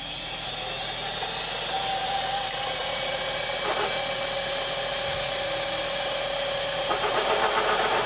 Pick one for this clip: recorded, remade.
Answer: recorded